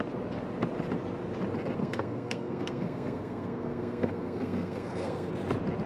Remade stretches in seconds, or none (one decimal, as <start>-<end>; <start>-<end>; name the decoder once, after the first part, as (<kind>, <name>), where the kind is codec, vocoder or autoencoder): 1.8-5.3 (codec, SNAC)